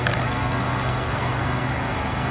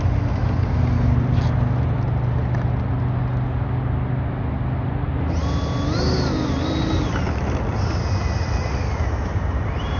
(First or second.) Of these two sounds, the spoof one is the first